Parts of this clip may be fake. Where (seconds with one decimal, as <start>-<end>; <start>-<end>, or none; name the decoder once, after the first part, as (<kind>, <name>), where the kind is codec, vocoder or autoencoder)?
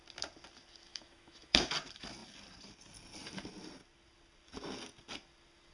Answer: 0.9-1.7 (autoencoder, DAC-VAE)